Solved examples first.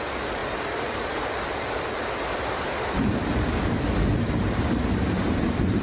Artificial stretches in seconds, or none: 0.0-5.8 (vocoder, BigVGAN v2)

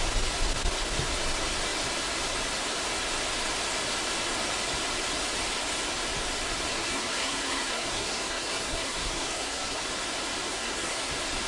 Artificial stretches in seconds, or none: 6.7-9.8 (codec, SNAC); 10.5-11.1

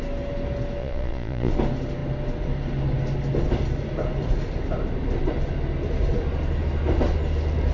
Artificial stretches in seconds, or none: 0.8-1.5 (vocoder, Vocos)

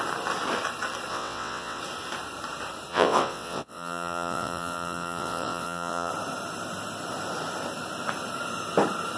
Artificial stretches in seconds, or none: 1.1-1.8 (vocoder, WaveNeXt); 2.9-6.1